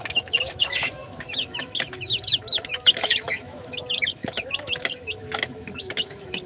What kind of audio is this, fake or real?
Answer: fake